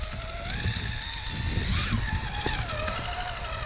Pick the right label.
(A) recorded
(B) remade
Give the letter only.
A